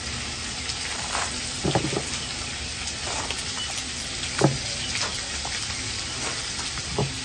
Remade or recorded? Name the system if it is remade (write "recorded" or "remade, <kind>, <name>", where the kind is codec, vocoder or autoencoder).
recorded